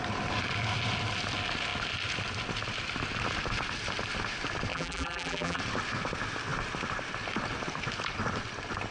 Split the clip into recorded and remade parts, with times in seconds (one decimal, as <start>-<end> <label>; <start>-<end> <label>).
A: 0.0-4.7 recorded; 4.7-5.6 remade; 5.6-8.9 recorded